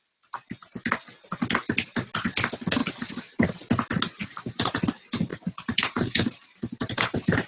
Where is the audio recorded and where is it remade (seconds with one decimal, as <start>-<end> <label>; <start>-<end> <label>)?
0.0-2.8 recorded; 2.8-3.6 remade; 3.6-4.2 recorded; 4.2-4.7 remade; 4.7-5.3 recorded; 5.3-7.5 remade